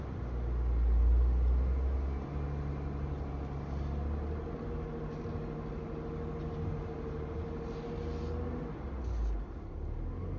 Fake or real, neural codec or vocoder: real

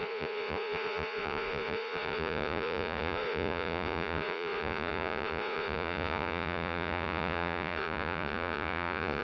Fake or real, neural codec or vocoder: fake, vocoder, Vocos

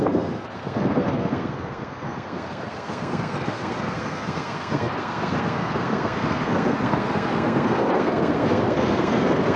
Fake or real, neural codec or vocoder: fake, codec, SNAC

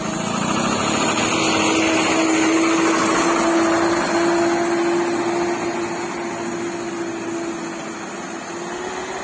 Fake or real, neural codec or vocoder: real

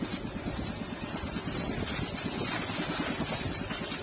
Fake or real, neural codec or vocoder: real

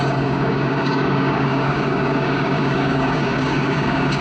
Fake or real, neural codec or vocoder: fake, codec, DAC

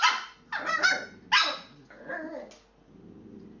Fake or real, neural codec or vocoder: real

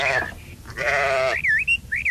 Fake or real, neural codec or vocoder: real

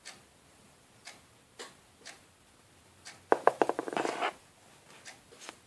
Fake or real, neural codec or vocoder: real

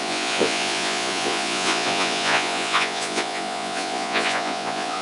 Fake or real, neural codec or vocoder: fake, vocoder, Vocos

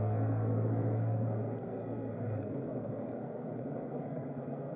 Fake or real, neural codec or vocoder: fake, codec, SNAC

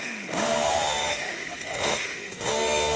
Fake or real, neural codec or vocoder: fake, autoencoder, DAC-VAE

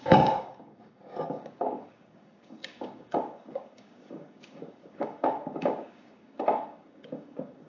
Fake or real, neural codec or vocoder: fake, codec, DAC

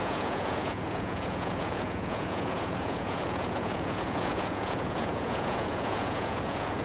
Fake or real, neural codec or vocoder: fake, vocoder, Vocos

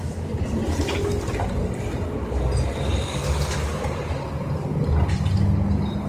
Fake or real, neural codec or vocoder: real